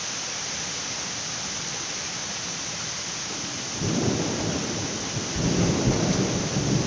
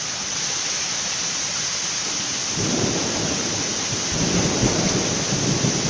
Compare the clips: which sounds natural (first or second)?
first